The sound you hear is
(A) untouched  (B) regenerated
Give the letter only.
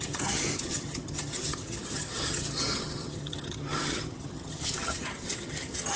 B